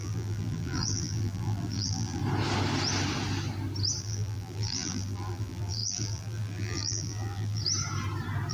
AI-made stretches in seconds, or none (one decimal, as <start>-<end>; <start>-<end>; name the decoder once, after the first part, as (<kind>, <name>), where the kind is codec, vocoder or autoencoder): 0.0-2.2 (vocoder, BigVGAN v2); 4.0-7.6